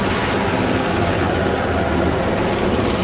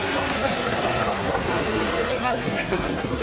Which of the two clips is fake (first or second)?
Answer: second